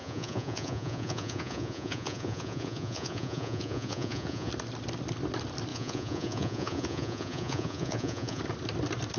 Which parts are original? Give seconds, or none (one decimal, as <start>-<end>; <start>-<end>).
4.5-5.7; 8.4-9.2